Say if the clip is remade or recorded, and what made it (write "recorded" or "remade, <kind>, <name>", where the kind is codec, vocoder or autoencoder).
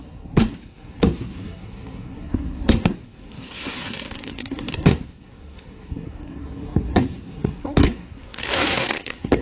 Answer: remade, codec, SNAC